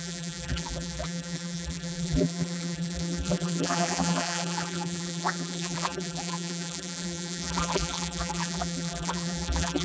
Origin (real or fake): fake